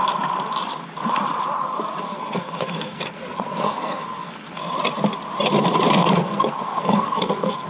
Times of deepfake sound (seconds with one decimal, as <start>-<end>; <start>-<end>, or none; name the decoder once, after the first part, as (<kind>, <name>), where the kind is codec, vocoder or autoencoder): 2.0-4.6 (codec, SNAC); 6.0-7.7